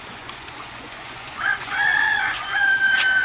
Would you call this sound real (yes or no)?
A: no